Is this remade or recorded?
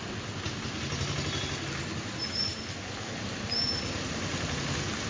recorded